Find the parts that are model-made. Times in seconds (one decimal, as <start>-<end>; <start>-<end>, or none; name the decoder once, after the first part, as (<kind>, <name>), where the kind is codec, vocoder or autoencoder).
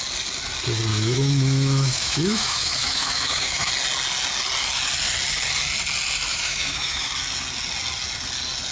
0.9-3.7 (autoencoder, DAC-VAE); 6.3-7.1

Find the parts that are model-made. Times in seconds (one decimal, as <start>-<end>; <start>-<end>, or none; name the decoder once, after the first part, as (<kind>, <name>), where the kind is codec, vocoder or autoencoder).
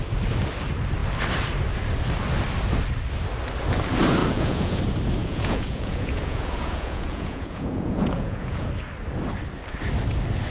4.2-4.8 (vocoder, Vocos); 5.2-8.7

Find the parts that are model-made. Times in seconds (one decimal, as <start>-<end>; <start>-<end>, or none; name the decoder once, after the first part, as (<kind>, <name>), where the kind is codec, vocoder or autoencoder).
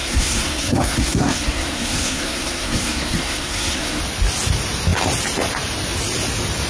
0.0-4.0 (codec, SNAC)